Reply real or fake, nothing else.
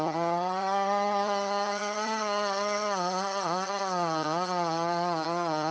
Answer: fake